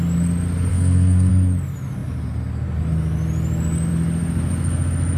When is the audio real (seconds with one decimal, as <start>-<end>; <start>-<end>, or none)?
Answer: 0.0-0.7; 1.3-5.2